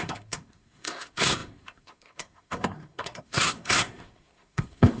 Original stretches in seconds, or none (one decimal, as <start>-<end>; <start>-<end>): none